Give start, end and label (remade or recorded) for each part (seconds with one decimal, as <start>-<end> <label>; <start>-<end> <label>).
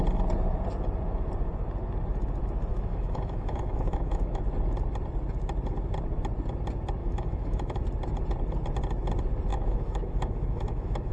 0.0-2.7 recorded; 2.7-4.4 remade; 4.4-7.0 recorded; 7.0-7.8 remade; 7.8-9.5 recorded; 9.5-11.1 remade